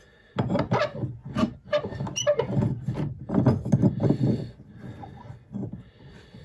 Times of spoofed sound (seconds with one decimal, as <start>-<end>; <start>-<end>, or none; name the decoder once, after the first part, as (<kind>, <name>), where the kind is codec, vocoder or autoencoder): 1.2-1.9 (vocoder, BigVGAN v2)